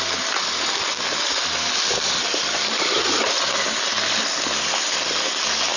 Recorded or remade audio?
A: recorded